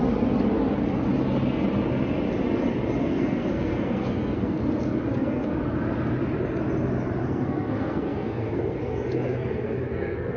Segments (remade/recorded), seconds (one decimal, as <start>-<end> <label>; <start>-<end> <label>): 0.0-3.0 recorded; 3.0-4.6 remade; 4.6-5.1 recorded; 5.1-5.6 remade; 5.6-7.2 recorded; 7.2-10.4 remade